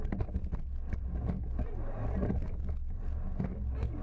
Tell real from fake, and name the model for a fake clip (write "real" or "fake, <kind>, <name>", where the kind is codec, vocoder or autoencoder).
real